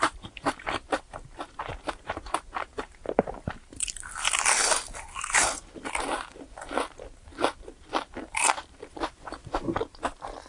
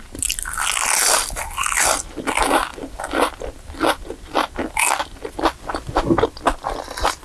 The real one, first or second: second